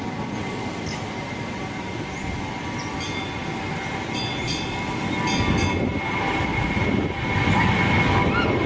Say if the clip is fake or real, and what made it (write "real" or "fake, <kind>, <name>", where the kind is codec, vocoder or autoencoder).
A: real